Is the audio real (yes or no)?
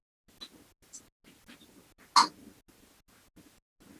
yes